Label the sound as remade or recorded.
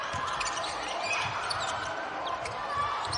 remade